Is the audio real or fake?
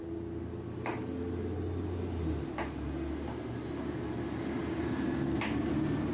real